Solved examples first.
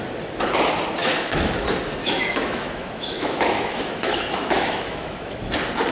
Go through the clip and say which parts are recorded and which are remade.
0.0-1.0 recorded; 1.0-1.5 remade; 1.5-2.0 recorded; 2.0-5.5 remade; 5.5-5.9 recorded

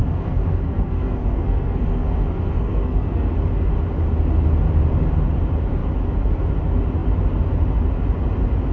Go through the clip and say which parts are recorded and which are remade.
0.0-3.3 remade; 3.3-8.7 recorded

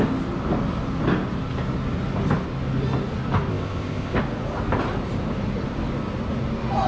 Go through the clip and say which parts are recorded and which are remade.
0.0-3.5 recorded; 3.5-4.2 remade; 4.2-6.9 recorded

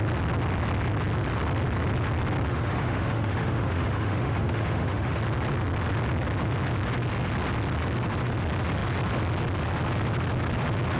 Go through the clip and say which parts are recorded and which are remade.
0.0-2.5 recorded; 2.5-5.2 remade; 5.2-11.0 recorded

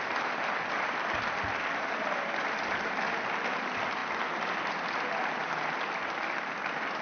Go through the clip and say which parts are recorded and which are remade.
0.0-7.0 recorded

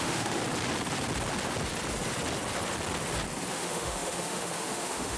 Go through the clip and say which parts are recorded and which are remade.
0.0-0.4 remade; 0.4-3.5 recorded; 3.5-5.2 remade